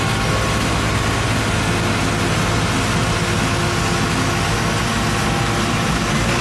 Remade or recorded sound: recorded